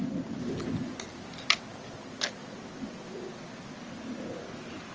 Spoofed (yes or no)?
no